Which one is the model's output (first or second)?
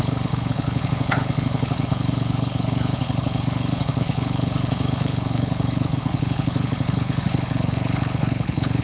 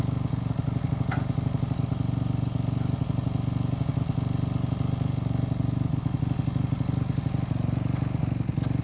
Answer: first